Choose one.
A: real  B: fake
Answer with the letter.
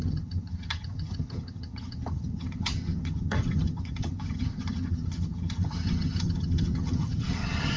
B